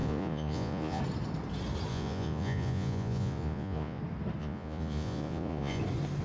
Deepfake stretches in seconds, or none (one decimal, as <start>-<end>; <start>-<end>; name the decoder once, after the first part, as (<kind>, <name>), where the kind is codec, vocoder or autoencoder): 0.0-1.0 (vocoder, Vocos); 1.9-4.0; 4.4-5.8